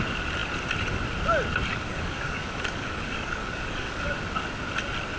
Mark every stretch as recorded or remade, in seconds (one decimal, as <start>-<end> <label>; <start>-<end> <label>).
0.0-1.7 recorded; 1.7-4.1 remade; 4.1-5.2 recorded